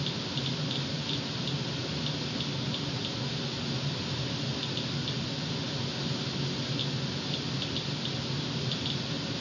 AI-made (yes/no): no